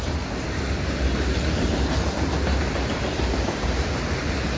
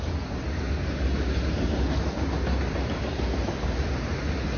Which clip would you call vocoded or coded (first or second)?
first